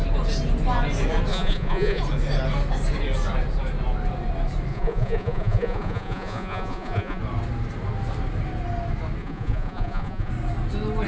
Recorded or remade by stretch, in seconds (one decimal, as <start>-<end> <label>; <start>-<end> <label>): 0.0-1.3 recorded; 1.3-2.0 remade; 2.0-4.7 recorded; 4.7-7.2 remade; 7.2-9.2 recorded; 9.2-10.3 remade; 10.3-11.1 recorded